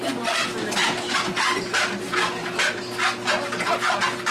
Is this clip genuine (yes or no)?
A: yes